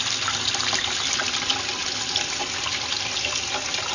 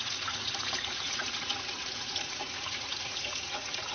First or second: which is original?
first